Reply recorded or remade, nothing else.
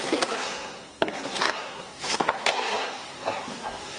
remade